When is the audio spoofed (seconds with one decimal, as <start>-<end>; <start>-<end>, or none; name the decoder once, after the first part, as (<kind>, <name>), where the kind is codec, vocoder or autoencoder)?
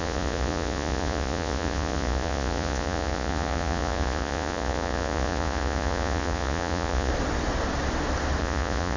0.0-7.1 (vocoder, Vocos); 8.4-9.0